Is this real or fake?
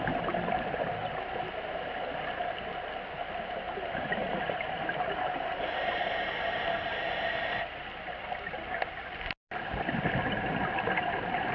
real